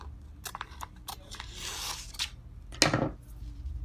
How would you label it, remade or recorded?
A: recorded